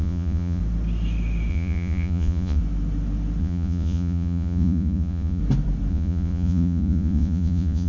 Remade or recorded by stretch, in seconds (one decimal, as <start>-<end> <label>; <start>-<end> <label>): 0.0-0.6 remade; 0.6-1.5 recorded; 1.5-2.6 remade; 2.6-3.4 recorded; 3.4-5.4 remade; 5.4-5.9 recorded; 5.9-7.9 remade